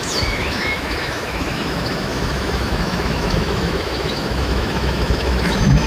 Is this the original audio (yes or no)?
no